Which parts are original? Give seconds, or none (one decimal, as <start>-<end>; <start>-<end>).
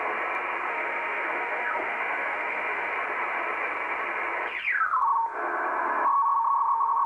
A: 0.0-0.7; 2.9-7.1